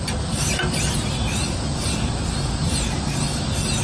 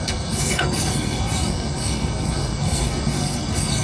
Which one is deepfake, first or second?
second